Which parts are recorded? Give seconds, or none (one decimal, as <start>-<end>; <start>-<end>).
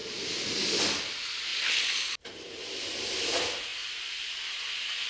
0.7-3.7; 4.3-5.1